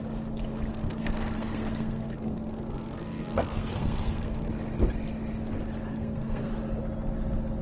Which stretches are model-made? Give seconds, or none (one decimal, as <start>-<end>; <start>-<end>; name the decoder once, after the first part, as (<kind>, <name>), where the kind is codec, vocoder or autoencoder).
0.7-4.5 (codec, SNAC); 5.9-6.5